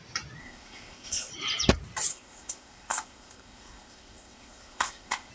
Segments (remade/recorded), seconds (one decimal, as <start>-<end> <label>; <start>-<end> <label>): 0.0-0.4 recorded; 0.4-1.3 remade; 1.3-2.1 recorded; 2.1-5.3 remade